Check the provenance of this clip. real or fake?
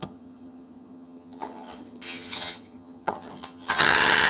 fake